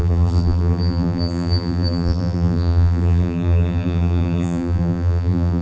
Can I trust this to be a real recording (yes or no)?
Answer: no